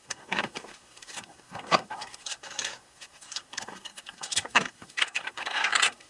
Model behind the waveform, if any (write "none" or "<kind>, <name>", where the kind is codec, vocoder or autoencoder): codec, SNAC